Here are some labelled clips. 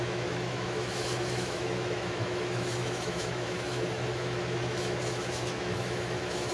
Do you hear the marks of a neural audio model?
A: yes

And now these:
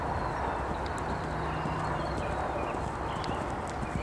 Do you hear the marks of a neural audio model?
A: no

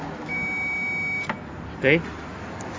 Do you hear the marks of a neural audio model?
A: no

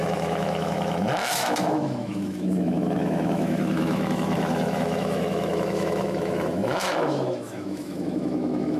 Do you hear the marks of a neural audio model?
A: yes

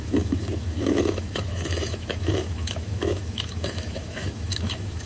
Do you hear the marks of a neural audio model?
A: yes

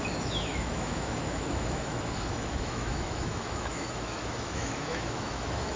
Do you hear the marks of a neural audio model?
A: yes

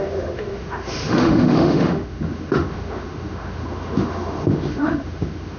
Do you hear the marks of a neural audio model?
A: yes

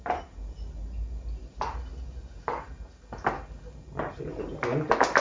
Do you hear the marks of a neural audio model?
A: no